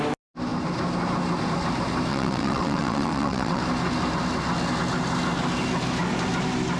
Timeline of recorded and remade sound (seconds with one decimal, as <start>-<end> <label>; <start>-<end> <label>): 0.0-2.1 recorded; 2.1-3.6 remade; 3.6-6.8 recorded